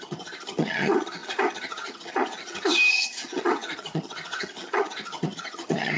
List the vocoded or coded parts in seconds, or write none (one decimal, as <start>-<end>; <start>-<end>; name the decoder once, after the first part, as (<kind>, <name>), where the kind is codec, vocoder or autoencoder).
0.0-6.0 (vocoder, HiFi-GAN)